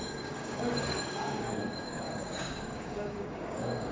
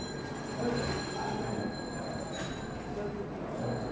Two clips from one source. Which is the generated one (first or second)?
first